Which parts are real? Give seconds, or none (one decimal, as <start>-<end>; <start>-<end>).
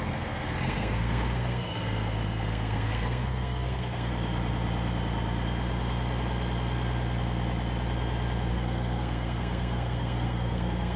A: 4.1-8.5